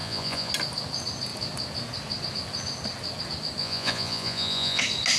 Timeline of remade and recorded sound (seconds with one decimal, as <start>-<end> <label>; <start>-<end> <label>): 0.0-0.5 remade; 0.5-3.6 recorded; 3.6-4.8 remade; 4.8-5.2 recorded